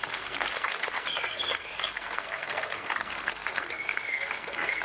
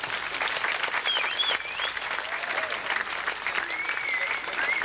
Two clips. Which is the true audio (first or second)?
second